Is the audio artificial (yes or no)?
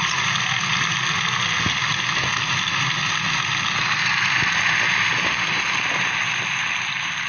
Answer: no